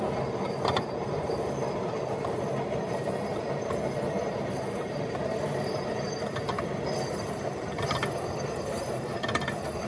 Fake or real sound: fake